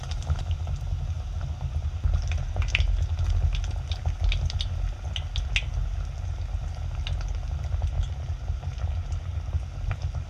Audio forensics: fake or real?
real